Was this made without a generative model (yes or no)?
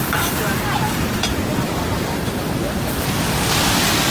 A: no